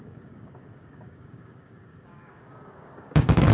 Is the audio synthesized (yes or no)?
yes